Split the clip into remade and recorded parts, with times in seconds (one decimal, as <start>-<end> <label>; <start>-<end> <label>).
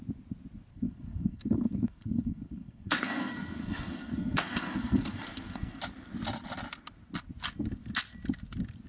0.0-0.7 recorded; 0.7-5.8 remade; 5.8-8.9 recorded